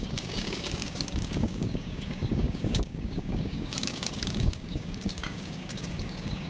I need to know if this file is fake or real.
fake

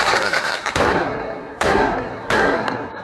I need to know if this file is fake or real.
fake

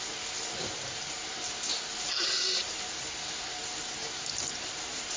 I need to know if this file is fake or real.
real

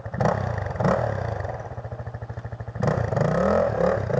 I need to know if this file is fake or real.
real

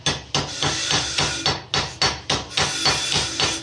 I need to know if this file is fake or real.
real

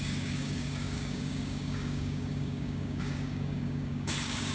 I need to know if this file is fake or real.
fake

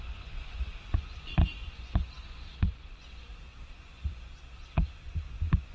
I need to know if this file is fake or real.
fake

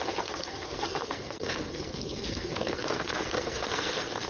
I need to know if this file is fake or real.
fake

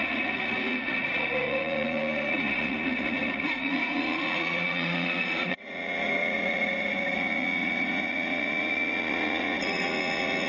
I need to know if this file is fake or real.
fake